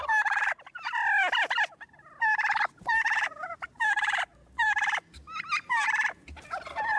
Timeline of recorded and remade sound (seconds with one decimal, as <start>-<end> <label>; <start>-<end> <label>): 0.0-1.0 remade; 1.0-2.8 recorded; 2.8-4.3 remade; 4.3-5.6 recorded; 5.6-7.0 remade